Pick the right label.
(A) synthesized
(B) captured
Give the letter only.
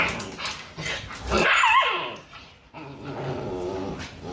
B